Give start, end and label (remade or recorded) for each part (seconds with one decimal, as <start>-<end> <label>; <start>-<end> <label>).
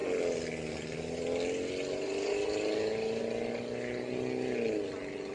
0.0-5.3 recorded